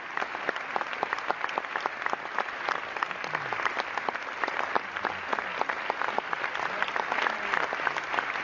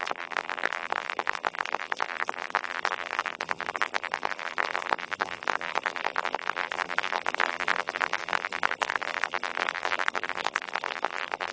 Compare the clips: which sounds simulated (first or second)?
second